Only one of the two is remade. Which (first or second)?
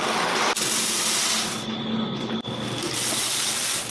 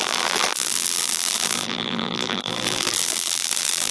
second